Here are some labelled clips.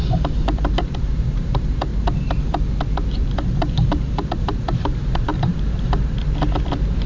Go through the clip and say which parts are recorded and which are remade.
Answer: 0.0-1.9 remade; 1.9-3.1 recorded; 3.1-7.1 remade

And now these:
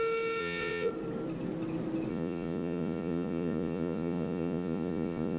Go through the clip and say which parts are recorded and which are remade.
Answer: 0.0-0.4 recorded; 0.4-0.9 remade; 0.9-2.1 recorded; 2.1-5.4 remade

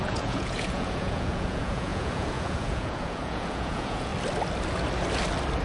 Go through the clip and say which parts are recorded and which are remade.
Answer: 0.0-4.1 remade; 4.1-5.6 recorded

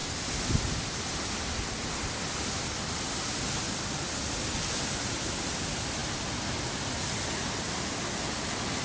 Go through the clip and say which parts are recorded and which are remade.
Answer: 0.0-8.8 recorded

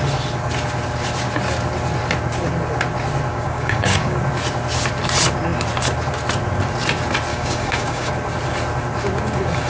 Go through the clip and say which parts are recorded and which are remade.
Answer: 0.0-3.3 recorded; 3.3-4.2 remade; 4.2-7.3 recorded; 7.3-8.1 remade; 8.1-9.7 recorded

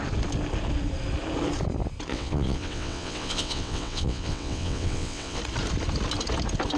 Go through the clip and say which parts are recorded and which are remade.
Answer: 0.0-2.1 recorded; 2.1-5.4 remade; 5.4-6.8 recorded

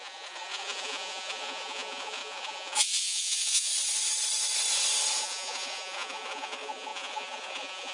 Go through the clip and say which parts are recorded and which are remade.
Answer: 0.0-3.7 remade; 3.7-5.2 recorded; 5.2-7.9 remade

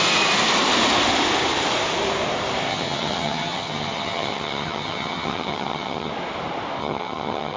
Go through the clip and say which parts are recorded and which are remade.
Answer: 0.0-2.7 recorded; 2.7-6.1 remade; 6.1-6.8 recorded; 6.8-7.6 remade